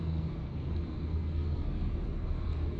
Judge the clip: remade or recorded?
remade